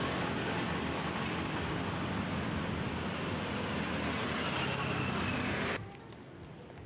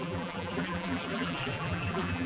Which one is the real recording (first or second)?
first